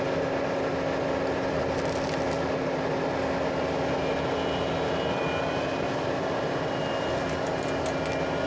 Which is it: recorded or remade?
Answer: recorded